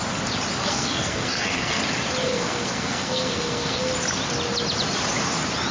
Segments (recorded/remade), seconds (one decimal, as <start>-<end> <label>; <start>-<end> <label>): 0.0-0.6 recorded; 0.6-1.8 remade; 1.8-2.2 recorded; 2.2-3.9 remade; 3.9-5.7 recorded